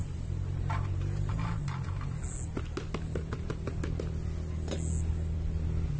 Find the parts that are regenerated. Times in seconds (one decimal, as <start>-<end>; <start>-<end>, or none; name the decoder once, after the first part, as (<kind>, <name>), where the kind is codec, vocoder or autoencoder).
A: 0.0-1.3 (vocoder, BigVGAN v2)